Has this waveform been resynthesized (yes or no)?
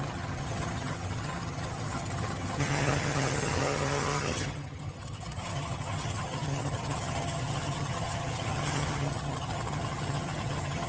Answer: yes